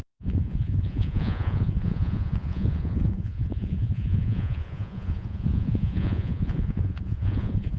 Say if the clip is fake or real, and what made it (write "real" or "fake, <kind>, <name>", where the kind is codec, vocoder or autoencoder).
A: fake, vocoder, Vocos